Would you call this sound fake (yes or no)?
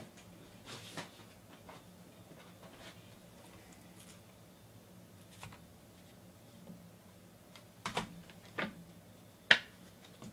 no